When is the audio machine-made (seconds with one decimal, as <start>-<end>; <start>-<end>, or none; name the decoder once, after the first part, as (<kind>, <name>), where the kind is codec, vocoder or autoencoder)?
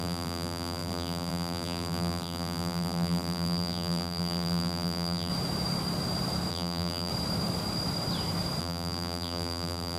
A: 0.0-5.3 (vocoder, BigVGAN v2); 6.5-7.1; 8.6-10.0